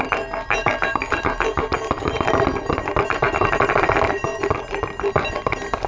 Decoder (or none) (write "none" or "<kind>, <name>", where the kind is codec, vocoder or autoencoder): none